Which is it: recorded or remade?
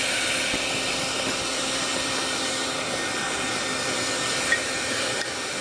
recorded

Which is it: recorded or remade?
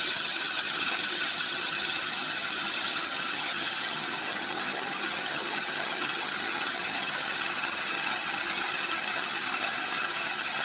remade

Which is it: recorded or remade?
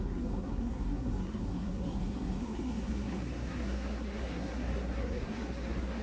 remade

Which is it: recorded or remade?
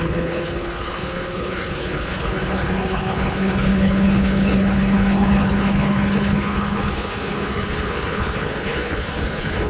remade